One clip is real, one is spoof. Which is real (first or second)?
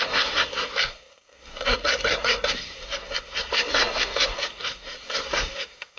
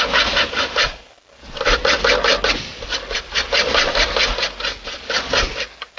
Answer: second